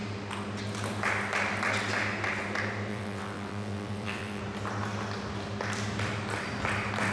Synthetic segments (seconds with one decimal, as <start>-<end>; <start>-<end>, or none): 2.9-4.4